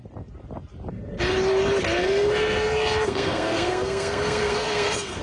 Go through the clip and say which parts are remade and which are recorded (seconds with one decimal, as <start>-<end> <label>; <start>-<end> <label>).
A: 0.0-2.0 recorded; 2.0-5.2 remade